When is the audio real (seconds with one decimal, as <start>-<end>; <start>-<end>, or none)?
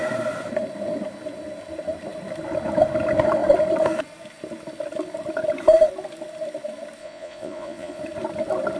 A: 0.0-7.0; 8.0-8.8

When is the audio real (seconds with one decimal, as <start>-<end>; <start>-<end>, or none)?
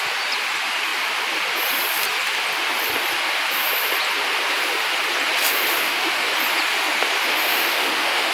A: 0.0-5.8; 6.3-7.3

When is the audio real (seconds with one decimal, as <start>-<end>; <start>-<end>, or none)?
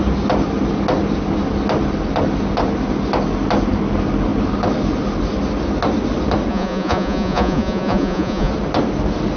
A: 0.0-6.5; 8.5-9.4